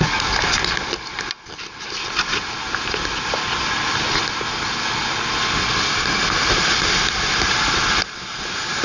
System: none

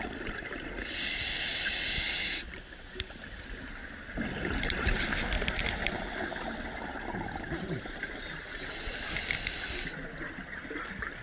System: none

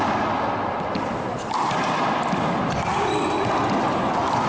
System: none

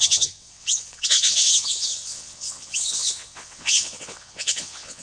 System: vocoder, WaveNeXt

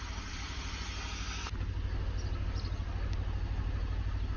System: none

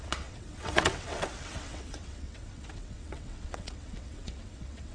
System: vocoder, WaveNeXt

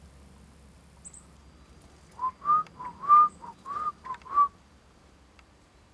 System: none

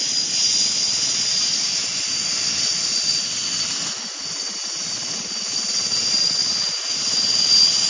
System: none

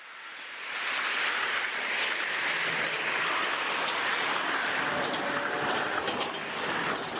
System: none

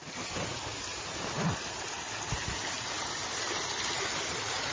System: none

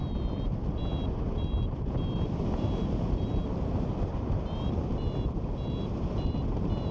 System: none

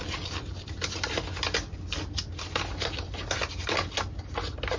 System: none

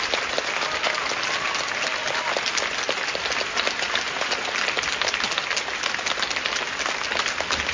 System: none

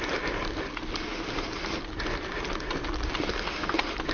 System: none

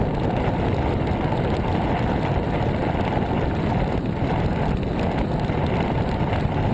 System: none